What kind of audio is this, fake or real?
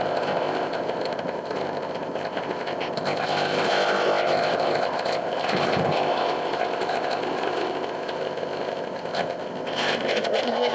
fake